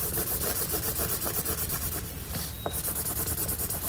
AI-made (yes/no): yes